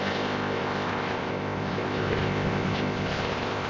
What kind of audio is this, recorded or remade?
remade